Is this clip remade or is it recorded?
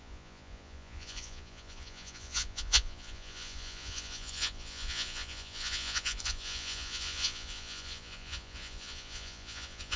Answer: remade